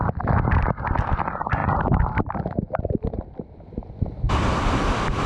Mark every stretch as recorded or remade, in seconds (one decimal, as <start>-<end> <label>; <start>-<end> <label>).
0.0-5.3 recorded